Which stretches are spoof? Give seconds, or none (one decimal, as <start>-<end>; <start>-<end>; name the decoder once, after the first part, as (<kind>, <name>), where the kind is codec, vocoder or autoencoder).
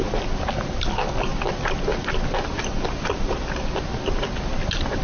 none